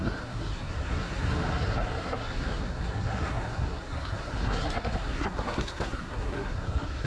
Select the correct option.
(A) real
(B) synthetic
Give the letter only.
B